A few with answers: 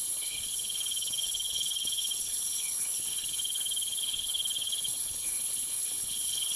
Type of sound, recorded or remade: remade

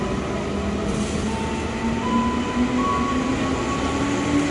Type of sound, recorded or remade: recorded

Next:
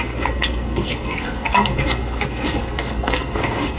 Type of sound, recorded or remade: remade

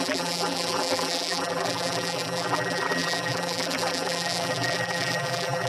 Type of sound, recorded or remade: remade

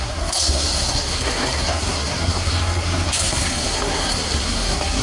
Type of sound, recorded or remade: remade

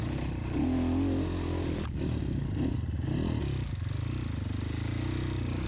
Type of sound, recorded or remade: recorded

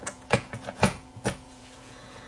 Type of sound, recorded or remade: remade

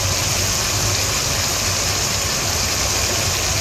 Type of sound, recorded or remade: recorded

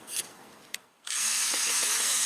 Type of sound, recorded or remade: remade